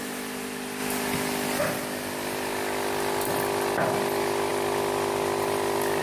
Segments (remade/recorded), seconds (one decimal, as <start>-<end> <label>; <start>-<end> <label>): 0.0-6.0 recorded